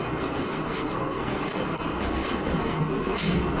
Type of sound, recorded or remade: remade